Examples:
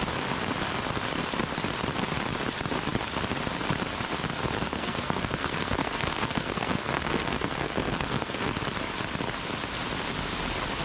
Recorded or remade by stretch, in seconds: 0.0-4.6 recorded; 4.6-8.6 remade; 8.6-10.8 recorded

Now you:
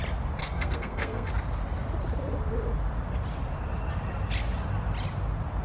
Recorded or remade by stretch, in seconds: 0.0-0.4 recorded; 0.4-1.3 remade; 1.3-5.6 recorded